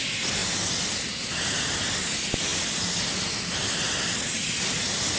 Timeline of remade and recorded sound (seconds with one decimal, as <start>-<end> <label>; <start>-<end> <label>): 0.0-5.2 recorded

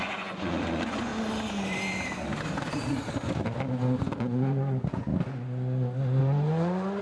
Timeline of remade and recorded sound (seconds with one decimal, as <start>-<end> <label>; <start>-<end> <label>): 0.0-1.1 remade; 1.1-4.0 recorded; 4.0-5.1 remade; 5.1-6.2 recorded; 6.2-7.0 remade

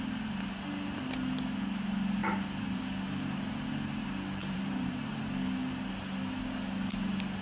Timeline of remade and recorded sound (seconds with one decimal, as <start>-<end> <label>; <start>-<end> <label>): 0.0-2.2 recorded; 2.2-2.8 remade; 2.8-4.4 recorded; 4.4-5.2 remade; 5.2-7.4 recorded

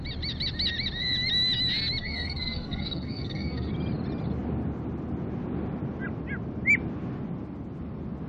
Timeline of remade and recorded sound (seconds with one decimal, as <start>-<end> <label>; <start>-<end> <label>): 0.0-2.0 recorded; 2.0-3.7 remade; 3.7-8.3 recorded